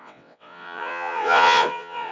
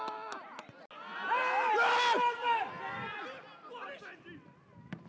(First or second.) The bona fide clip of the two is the second